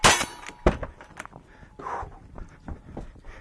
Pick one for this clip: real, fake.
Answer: real